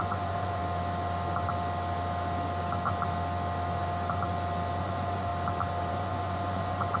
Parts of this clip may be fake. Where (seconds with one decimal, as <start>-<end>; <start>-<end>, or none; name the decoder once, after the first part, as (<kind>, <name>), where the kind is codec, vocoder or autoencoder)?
0.0-0.6 (vocoder, Vocos); 4.8-5.3; 5.9-7.0